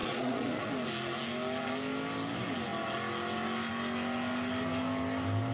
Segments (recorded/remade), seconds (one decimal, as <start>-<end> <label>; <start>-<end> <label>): 0.0-0.7 remade; 0.7-5.5 recorded